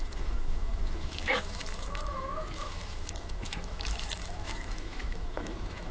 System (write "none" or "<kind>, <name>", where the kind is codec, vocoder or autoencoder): autoencoder, DAC-VAE